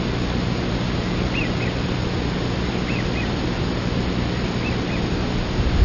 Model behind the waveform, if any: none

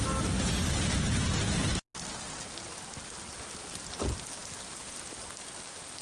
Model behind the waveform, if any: none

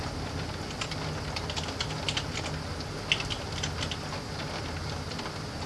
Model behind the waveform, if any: none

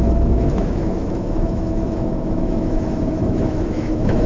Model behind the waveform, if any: autoencoder, DAC-VAE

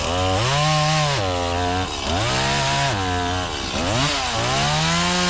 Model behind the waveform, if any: none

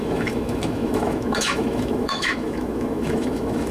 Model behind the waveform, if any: autoencoder, DAC-VAE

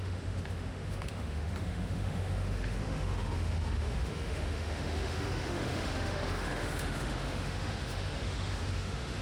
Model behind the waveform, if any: autoencoder, DAC-VAE